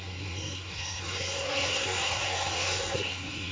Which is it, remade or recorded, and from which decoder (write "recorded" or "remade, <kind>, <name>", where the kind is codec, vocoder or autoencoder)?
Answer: remade, codec, SNAC